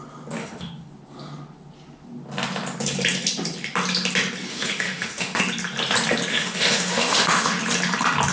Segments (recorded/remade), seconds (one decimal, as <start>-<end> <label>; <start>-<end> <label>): 0.0-0.4 recorded; 0.4-0.9 remade; 0.9-4.5 recorded; 4.5-5.4 remade; 5.4-6.3 recorded; 6.3-7.6 remade; 7.6-8.3 recorded